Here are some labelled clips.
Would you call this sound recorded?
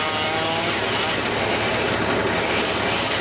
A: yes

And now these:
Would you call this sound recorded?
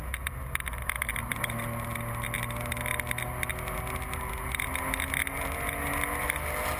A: yes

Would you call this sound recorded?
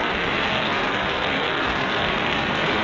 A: no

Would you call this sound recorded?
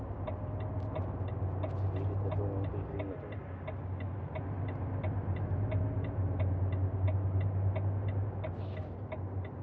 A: yes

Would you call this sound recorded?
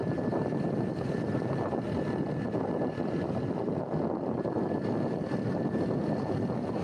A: yes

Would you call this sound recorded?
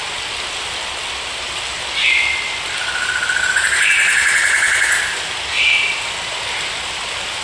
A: yes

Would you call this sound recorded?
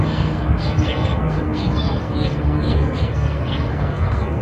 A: no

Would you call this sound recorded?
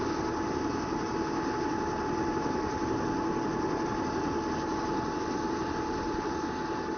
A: yes